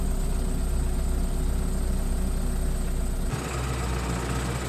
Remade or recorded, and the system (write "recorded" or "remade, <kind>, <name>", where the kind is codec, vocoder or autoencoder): recorded